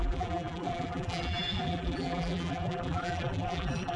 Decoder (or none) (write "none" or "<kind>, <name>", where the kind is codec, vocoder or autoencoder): vocoder, BigVGAN v2